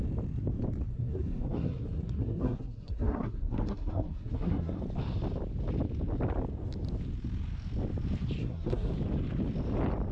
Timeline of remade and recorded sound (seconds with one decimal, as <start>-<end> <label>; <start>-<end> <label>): 0.0-0.9 recorded; 0.9-4.8 remade; 4.8-8.4 recorded; 8.4-8.9 remade; 8.9-10.1 recorded